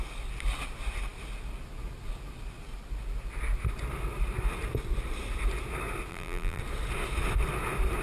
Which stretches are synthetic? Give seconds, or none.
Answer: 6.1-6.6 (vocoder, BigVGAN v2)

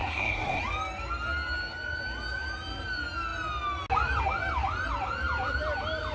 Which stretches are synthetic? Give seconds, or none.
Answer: 0.0-0.6 (codec, SNAC)

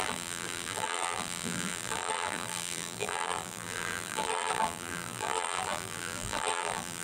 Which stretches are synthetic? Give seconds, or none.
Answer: 0.0-7.0 (vocoder, BigVGAN v2)

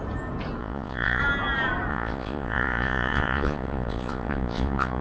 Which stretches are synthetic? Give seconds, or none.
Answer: 0.6-1.2 (vocoder, Vocos); 1.9-5.0

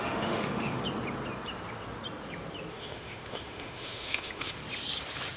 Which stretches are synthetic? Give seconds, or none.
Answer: 0.0-0.8 (autoencoder, DAC-VAE); 2.7-4.6

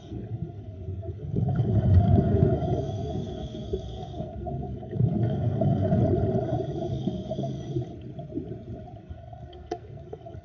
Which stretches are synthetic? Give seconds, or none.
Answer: 0.0-6.0 (codec, SNAC); 6.9-7.7; 9.0-10.4

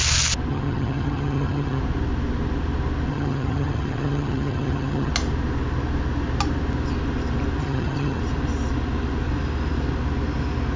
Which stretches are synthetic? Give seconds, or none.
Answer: 0.5-1.8 (vocoder, HiFi-GAN); 3.1-5.1; 7.6-8.2